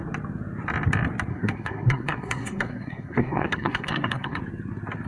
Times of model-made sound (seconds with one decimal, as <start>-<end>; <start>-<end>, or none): 1.3-4.4